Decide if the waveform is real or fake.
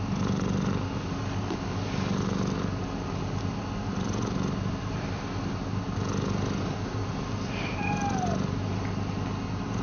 real